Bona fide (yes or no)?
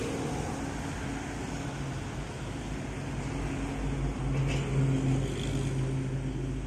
yes